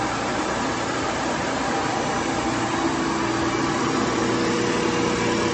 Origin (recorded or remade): recorded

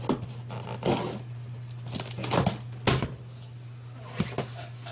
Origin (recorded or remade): recorded